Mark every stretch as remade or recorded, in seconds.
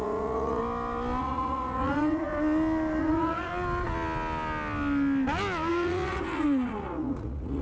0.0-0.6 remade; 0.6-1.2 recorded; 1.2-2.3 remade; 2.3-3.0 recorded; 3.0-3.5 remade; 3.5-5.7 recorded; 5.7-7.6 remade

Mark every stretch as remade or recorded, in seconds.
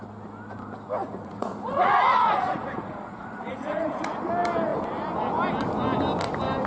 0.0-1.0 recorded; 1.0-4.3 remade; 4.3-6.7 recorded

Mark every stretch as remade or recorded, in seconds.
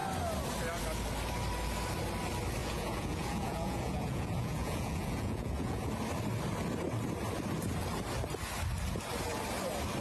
0.0-2.6 recorded; 2.6-5.9 remade; 5.9-10.0 recorded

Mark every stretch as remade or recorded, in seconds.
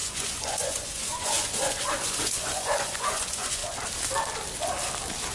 0.0-3.6 remade; 3.6-5.3 recorded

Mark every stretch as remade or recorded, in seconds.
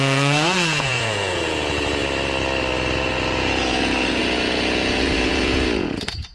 0.0-2.0 remade; 2.0-3.0 recorded; 3.0-6.3 remade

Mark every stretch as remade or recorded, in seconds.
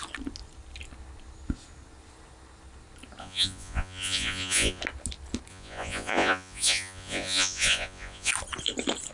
0.0-3.2 recorded; 3.2-4.8 remade; 4.8-5.5 recorded; 5.5-8.3 remade; 8.3-9.1 recorded